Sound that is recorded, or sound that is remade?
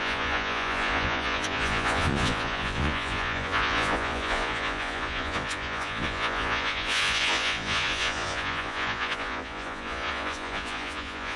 remade